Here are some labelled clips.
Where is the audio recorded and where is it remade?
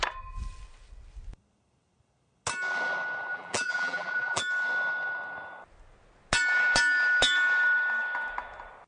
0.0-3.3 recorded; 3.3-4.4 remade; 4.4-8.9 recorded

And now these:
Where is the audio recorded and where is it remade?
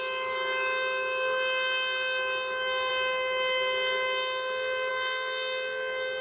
0.0-6.2 recorded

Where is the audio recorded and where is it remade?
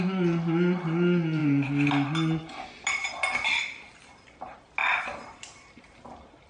0.0-4.8 recorded; 4.8-6.5 remade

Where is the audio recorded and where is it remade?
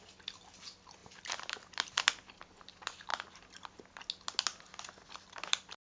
0.0-5.9 recorded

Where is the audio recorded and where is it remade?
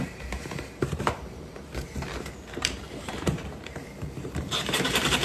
0.0-1.5 remade; 1.5-2.9 recorded; 2.9-5.2 remade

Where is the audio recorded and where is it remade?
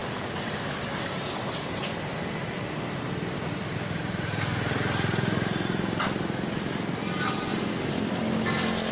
0.0-4.0 remade; 4.0-7.5 recorded; 7.5-8.1 remade; 8.1-8.9 recorded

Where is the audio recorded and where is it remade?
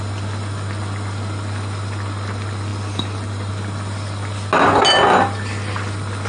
0.0-2.7 recorded; 2.7-3.5 remade; 3.5-6.3 recorded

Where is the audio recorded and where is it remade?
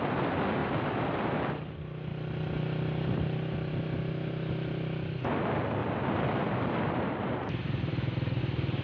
0.0-0.6 recorded; 0.6-1.3 remade; 1.3-5.8 recorded; 5.8-8.4 remade; 8.4-8.8 recorded